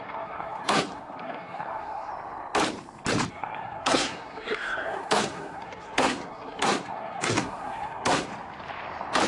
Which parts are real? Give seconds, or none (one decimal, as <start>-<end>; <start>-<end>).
2.1-3.3; 8.3-9.3

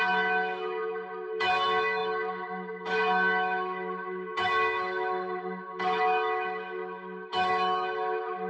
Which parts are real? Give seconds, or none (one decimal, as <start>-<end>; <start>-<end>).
none